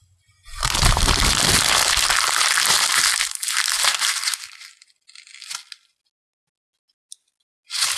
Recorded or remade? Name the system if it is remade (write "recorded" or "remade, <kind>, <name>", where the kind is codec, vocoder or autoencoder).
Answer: recorded